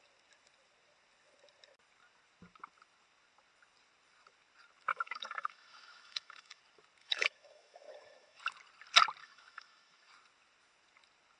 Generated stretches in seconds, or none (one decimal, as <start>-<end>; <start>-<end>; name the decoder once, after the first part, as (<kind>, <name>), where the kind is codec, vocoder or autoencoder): 4.9-6.6 (autoencoder, DAC-VAE); 7.0-8.4; 9.2-10.1